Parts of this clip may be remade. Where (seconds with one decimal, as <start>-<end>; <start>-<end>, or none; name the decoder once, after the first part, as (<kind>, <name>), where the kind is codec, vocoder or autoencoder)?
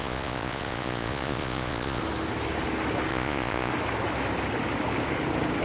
0.0-2.0 (vocoder, Vocos); 3.1-3.7